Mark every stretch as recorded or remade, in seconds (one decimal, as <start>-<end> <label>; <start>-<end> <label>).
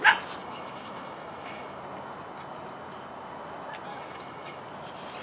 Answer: 0.0-0.4 recorded; 0.4-1.8 remade; 1.8-3.9 recorded; 3.9-4.6 remade; 4.6-5.2 recorded